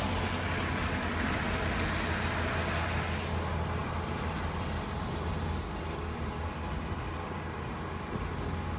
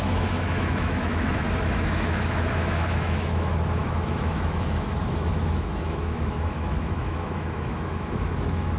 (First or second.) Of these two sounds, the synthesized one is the second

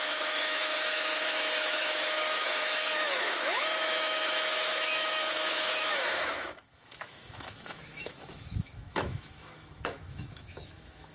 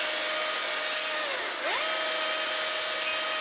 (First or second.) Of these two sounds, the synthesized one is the first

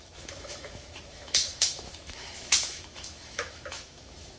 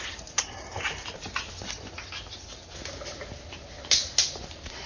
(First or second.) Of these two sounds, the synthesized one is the first